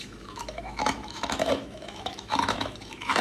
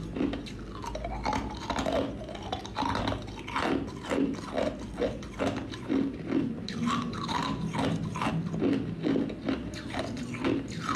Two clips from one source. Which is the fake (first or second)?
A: first